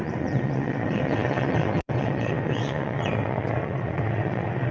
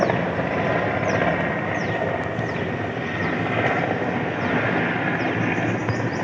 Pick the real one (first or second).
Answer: second